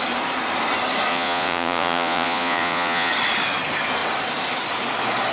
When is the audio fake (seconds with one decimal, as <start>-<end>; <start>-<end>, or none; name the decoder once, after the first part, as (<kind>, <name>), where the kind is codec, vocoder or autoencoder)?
1.1-3.1 (vocoder, Vocos)